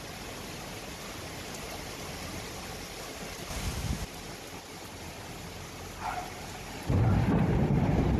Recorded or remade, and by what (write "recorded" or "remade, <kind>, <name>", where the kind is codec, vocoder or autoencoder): recorded